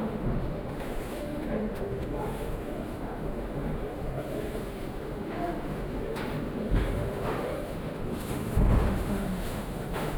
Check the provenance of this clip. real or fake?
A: fake